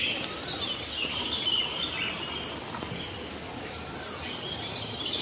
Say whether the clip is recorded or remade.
recorded